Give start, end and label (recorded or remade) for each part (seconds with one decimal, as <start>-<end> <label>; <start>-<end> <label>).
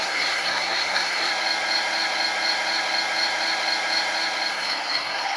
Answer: 0.0-1.3 remade; 1.3-4.5 recorded; 4.5-5.4 remade